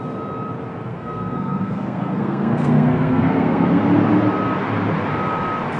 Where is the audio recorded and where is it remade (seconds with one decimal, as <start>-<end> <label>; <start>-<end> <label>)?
0.0-0.9 recorded; 0.9-3.8 remade; 3.8-5.8 recorded